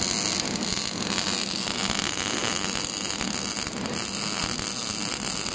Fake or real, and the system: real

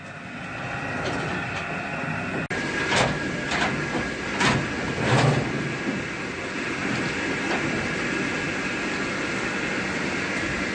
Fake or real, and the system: real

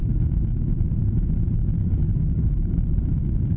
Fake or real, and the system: fake, vocoder, BigVGAN v2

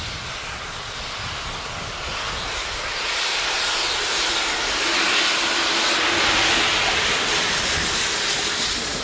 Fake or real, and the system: real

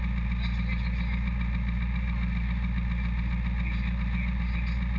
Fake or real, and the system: real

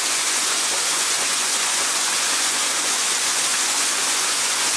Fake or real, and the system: fake, vocoder, Vocos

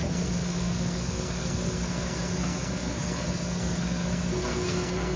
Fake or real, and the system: fake, codec, SNAC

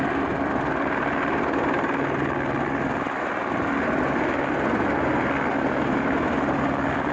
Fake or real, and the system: real